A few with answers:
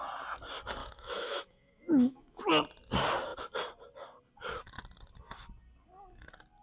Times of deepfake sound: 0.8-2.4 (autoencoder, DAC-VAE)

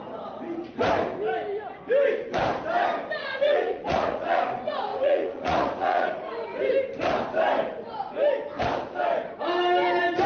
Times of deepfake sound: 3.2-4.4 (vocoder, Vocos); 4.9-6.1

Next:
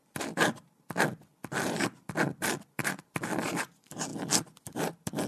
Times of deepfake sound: 1.4-2.1 (vocoder, BigVGAN v2); 2.8-3.6

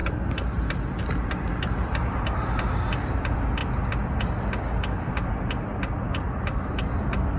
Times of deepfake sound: none

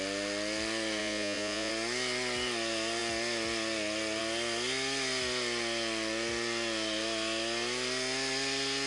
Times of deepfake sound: 1.0-1.7 (vocoder, Vocos)

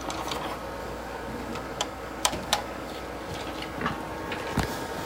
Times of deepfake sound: 0.8-3.0 (codec, DAC)